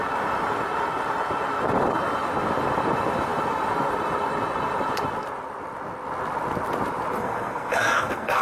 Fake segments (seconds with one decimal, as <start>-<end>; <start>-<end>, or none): 7.2-8.4